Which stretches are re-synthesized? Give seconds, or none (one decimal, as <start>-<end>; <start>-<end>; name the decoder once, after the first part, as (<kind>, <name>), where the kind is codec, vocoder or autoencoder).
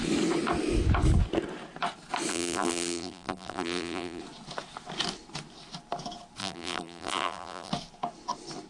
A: 2.3-4.2 (vocoder, BigVGAN v2); 6.4-7.7